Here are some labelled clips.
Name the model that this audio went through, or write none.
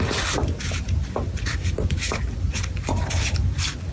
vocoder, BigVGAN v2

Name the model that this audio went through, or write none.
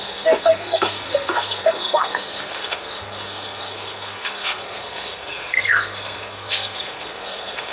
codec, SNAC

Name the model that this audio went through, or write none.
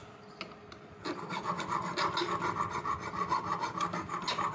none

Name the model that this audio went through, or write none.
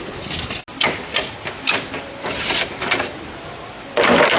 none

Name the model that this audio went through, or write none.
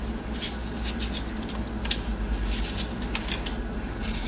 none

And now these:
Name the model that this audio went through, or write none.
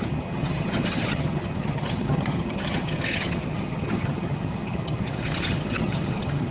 vocoder, HiFi-GAN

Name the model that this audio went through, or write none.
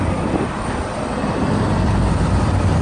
vocoder, BigVGAN v2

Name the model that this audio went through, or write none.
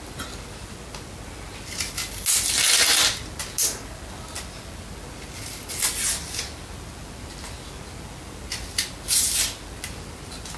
none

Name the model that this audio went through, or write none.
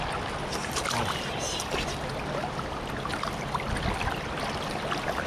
none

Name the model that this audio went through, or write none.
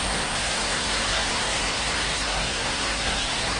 codec, SNAC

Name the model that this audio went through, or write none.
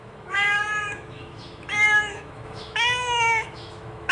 autoencoder, DAC-VAE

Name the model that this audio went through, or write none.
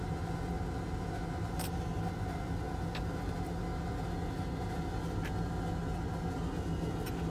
none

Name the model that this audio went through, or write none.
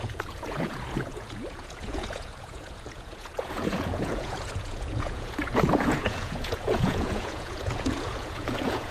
vocoder, Vocos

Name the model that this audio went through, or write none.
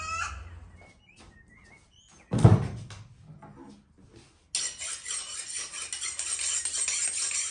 none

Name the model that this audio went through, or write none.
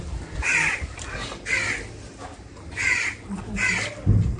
none